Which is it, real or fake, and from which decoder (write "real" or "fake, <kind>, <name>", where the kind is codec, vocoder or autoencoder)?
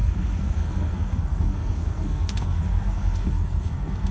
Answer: fake, codec, SNAC